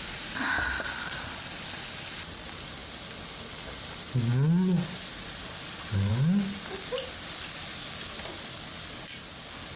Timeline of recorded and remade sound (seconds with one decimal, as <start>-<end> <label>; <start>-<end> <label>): 0.0-9.8 recorded